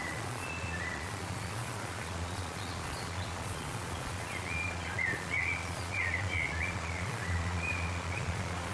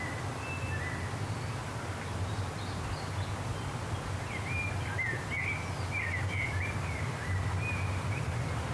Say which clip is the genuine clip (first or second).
second